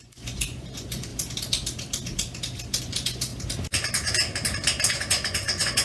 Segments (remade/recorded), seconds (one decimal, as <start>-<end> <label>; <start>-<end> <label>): 0.0-1.1 remade; 1.1-2.8 recorded; 2.8-3.3 remade; 3.3-4.9 recorded; 4.9-5.8 remade